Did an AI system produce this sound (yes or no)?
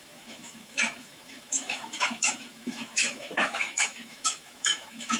yes